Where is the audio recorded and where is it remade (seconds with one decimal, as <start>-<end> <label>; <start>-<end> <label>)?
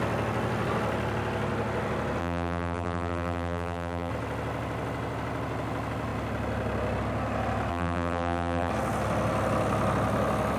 0.0-2.2 recorded; 2.2-4.1 remade; 4.1-7.7 recorded; 7.7-8.7 remade; 8.7-10.6 recorded